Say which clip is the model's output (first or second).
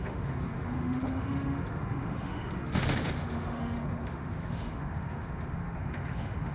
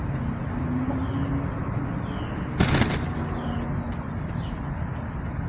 first